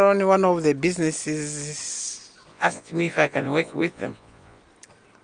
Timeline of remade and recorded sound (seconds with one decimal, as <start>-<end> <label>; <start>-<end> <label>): 0.0-2.5 recorded; 2.5-4.6 remade; 4.6-5.2 recorded